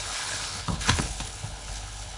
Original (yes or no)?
no